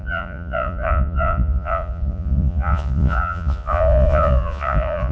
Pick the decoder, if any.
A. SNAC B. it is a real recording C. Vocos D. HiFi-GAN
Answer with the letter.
C